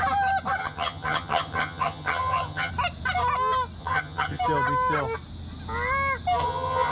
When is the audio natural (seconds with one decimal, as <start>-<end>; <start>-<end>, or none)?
0.0-0.6; 2.7-3.8; 4.4-6.4